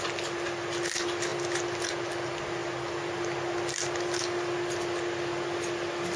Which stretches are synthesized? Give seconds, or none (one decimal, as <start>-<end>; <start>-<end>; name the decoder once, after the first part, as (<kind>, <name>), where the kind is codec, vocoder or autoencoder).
none